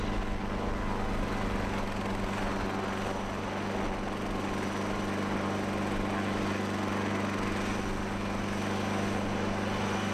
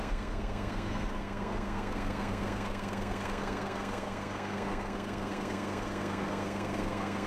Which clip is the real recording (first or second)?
first